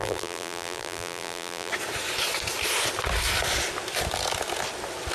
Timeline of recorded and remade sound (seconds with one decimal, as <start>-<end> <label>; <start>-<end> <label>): 0.0-1.7 remade; 1.7-5.1 recorded